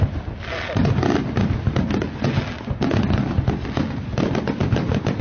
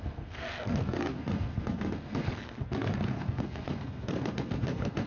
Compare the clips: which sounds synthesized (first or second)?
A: second